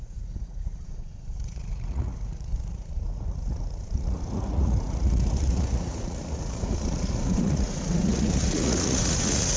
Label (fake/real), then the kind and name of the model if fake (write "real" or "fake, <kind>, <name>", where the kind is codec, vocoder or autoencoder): fake, vocoder, Vocos